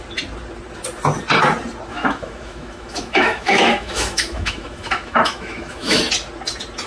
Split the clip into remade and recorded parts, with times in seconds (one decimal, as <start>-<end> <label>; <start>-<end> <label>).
0.0-1.9 recorded; 1.9-6.0 remade; 6.0-6.9 recorded